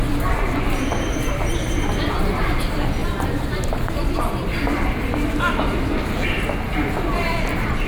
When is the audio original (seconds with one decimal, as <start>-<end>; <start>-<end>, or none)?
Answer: 0.0-7.9